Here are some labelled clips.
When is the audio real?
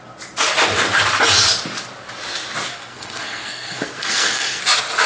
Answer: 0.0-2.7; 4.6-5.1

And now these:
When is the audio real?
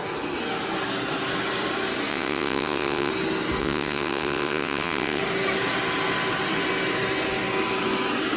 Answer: 0.0-2.1; 3.1-3.6; 5.2-8.4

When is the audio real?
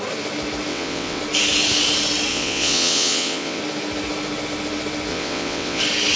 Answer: 0.0-0.7; 1.2-2.3; 3.6-5.1; 5.8-6.2